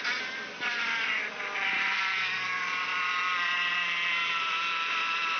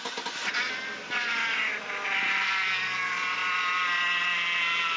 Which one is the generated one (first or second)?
first